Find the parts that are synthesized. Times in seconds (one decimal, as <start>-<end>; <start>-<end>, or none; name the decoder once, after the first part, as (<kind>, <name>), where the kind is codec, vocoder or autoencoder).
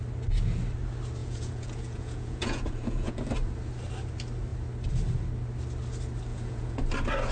1.2-3.3 (vocoder, Vocos); 6.3-6.8